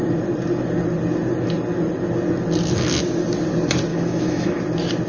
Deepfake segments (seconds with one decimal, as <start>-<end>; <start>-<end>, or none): 3.9-4.6